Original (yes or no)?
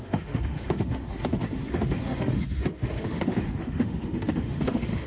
no